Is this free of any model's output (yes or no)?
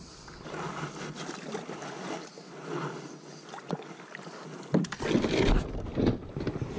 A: yes